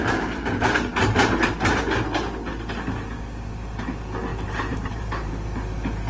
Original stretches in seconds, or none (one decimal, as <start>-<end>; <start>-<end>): 1.8-4.3; 5.3-6.1